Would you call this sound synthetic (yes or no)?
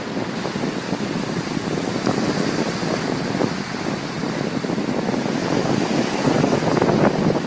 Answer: no